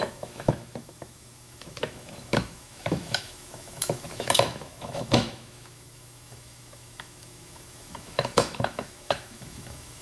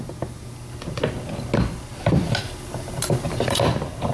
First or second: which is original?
second